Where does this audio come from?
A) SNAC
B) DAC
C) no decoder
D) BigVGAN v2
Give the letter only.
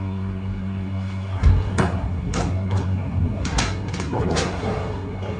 A